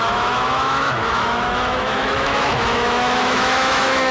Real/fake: fake